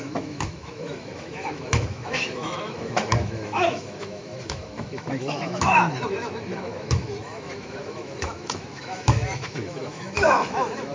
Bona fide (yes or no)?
no